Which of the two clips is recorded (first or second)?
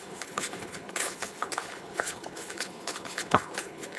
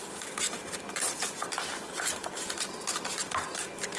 second